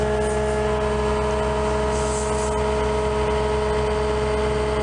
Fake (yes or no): no